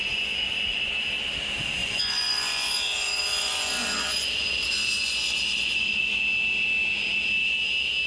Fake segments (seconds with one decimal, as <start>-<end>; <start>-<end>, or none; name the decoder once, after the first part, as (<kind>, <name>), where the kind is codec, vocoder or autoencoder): 0.0-0.8 (vocoder, Vocos); 1.8-6.2